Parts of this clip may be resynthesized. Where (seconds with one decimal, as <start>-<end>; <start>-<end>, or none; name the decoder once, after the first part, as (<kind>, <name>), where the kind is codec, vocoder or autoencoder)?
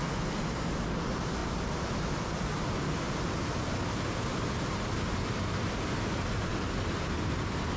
none